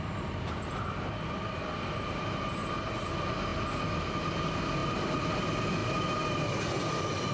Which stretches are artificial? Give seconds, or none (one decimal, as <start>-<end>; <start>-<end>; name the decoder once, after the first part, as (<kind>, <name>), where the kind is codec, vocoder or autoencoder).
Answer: 5.8-6.4 (vocoder, BigVGAN v2)